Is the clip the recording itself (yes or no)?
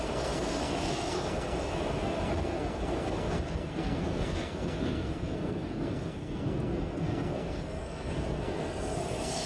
no